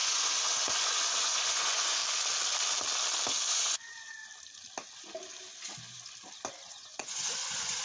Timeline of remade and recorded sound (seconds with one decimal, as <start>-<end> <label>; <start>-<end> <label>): 0.0-2.0 remade; 2.0-3.5 recorded; 3.5-4.2 remade; 4.2-6.7 recorded; 6.7-7.8 remade